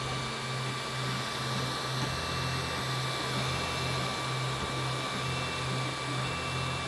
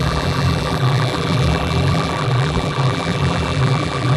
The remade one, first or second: second